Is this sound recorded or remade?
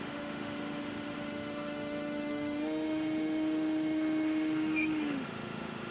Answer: remade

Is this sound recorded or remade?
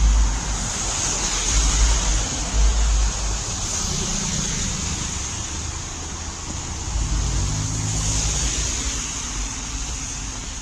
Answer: recorded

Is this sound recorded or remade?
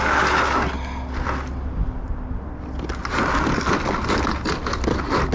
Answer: recorded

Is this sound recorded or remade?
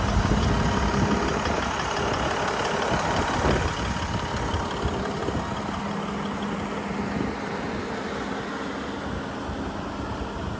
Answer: recorded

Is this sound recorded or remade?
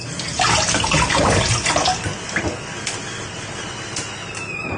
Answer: recorded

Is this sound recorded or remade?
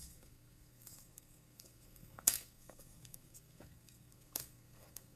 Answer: remade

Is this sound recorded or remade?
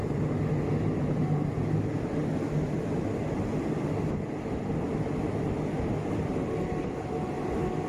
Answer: recorded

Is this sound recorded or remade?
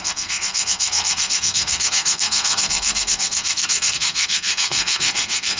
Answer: remade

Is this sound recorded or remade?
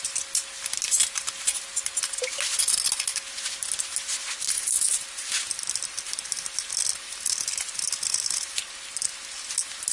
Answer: recorded